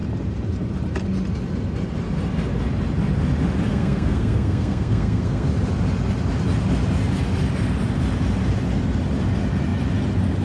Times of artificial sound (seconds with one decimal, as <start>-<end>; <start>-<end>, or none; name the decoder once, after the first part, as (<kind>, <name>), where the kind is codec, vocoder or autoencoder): 3.7-5.5 (codec, SNAC)